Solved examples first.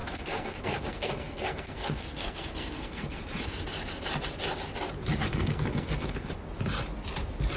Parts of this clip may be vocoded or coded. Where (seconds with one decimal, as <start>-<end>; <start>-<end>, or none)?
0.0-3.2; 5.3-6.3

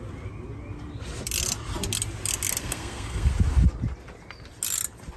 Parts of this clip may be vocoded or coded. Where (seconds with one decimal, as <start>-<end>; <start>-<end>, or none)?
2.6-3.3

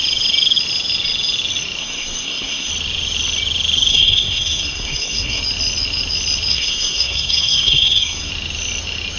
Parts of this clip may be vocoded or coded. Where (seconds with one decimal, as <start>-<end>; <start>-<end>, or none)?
1.8-2.7; 3.9-5.4; 6.5-8.3

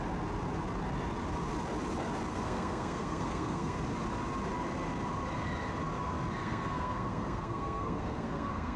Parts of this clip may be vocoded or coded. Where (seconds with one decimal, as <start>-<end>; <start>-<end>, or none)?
2.3-3.8; 6.4-8.8